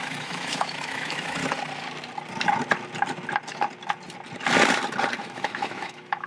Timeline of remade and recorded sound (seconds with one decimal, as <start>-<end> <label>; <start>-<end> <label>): 0.0-1.4 remade; 1.4-5.2 recorded; 5.2-6.3 remade